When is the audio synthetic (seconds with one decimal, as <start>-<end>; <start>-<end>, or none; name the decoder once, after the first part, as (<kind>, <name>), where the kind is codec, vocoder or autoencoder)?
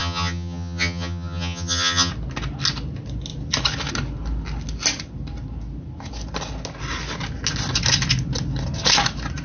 0.0-2.1 (vocoder, HiFi-GAN)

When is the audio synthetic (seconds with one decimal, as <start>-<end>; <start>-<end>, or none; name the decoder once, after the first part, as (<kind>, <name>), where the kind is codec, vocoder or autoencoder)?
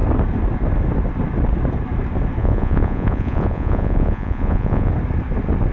2.4-4.9 (vocoder, Vocos)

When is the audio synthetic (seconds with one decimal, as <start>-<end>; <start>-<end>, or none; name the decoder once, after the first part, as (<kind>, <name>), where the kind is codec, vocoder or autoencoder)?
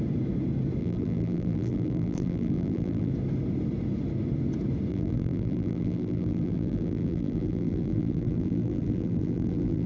0.8-3.1 (vocoder, BigVGAN v2); 4.9-9.9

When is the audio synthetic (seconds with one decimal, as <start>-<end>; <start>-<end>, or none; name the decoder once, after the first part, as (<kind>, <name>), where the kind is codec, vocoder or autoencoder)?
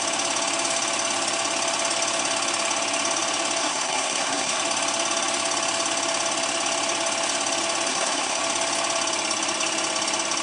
3.6-4.6 (codec, SNAC); 7.9-8.4